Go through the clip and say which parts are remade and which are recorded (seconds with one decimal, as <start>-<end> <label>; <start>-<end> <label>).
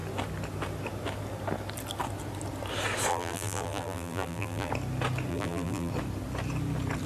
0.0-3.1 recorded; 3.1-4.7 remade; 4.7-5.3 recorded; 5.3-5.9 remade; 5.9-7.1 recorded